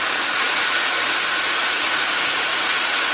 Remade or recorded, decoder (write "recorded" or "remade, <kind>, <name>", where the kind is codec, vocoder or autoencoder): remade, vocoder, Vocos